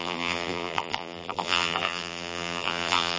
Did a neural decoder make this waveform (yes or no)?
yes